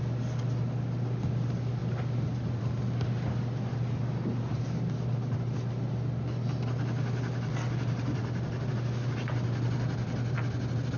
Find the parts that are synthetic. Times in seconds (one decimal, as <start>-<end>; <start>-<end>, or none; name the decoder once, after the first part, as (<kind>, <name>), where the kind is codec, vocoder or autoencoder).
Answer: none